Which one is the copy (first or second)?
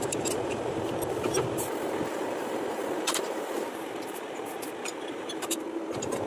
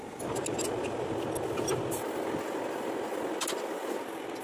first